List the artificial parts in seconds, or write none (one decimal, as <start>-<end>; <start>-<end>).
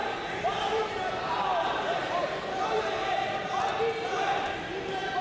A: none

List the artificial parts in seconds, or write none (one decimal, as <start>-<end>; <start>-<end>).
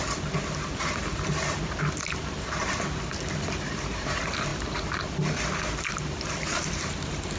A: 3.7-4.5; 5.9-7.4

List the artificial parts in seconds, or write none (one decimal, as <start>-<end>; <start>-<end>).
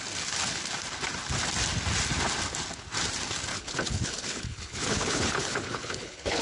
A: 3.5-6.4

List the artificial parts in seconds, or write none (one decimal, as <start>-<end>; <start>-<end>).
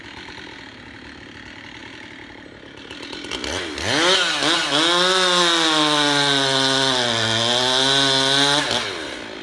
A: none